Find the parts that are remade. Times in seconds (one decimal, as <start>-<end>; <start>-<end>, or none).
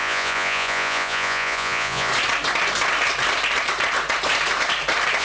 0.0-2.1